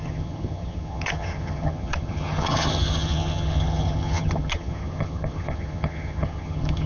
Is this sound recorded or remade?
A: remade